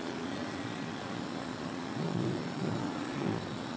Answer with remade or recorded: remade